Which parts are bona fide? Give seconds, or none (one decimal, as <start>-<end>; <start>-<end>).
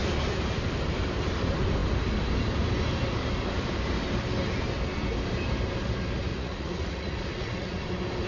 0.0-6.3; 7.8-8.3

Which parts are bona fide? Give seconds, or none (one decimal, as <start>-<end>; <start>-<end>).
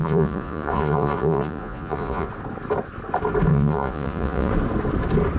2.3-3.5; 4.5-5.4